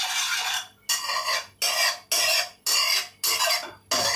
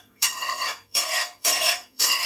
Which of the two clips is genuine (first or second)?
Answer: first